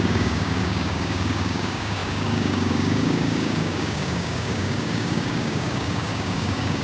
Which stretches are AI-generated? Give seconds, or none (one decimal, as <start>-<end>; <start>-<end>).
0.0-6.8